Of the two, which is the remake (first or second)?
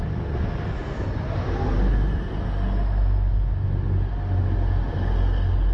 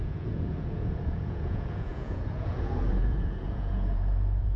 second